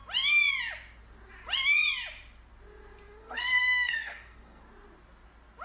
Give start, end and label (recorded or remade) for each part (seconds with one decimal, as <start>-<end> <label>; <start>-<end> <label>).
0.0-3.2 recorded; 3.2-4.6 remade; 4.6-5.6 recorded

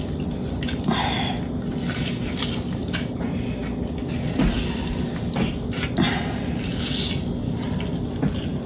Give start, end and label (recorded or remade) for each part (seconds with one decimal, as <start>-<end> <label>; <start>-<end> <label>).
0.0-8.7 recorded

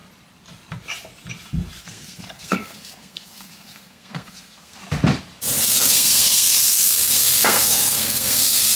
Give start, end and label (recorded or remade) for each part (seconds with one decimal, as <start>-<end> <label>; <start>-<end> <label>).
0.0-1.8 recorded; 1.8-4.8 remade; 4.8-5.6 recorded; 5.6-8.8 remade